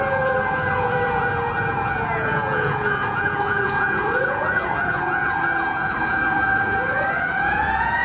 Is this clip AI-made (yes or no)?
yes